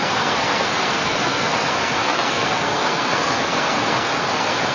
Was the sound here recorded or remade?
remade